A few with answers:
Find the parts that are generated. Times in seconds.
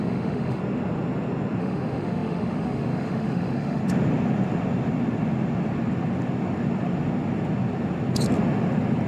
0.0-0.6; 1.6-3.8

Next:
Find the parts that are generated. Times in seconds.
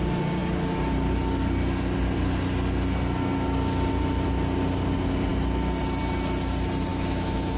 6.9-7.6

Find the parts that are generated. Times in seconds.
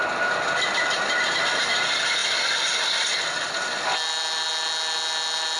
none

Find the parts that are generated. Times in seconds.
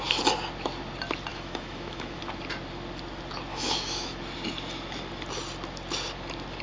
1.3-2.2; 3.5-4.2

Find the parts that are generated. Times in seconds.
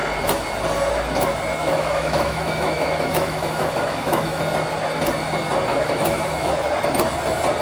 1.6-4.4; 5.7-6.5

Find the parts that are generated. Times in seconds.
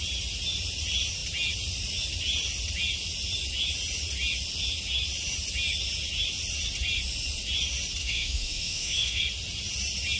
8.0-9.2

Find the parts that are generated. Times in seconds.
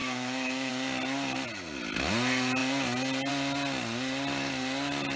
0.0-0.7